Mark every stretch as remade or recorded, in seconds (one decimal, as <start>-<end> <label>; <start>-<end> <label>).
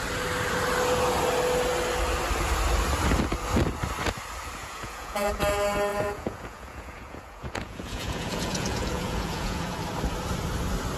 0.0-4.6 recorded; 4.6-5.4 remade; 5.4-5.9 recorded; 5.9-9.8 remade; 9.8-11.0 recorded